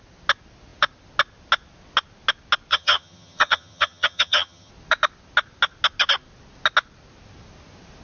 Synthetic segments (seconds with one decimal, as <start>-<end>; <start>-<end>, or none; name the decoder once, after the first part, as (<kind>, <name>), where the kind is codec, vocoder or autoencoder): 2.7-4.7 (vocoder, HiFi-GAN)